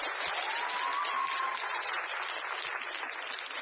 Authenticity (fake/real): real